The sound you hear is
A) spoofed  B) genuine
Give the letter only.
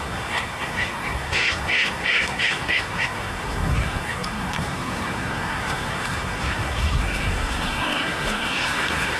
A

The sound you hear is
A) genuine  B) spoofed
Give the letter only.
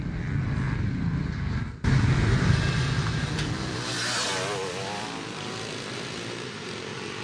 A